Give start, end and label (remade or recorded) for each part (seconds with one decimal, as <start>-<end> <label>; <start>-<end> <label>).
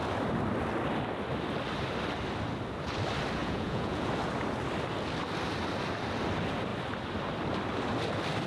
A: 0.0-3.4 recorded; 3.4-4.1 remade; 4.1-8.5 recorded